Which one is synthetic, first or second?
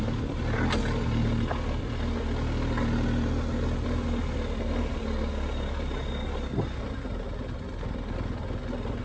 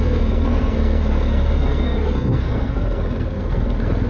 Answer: second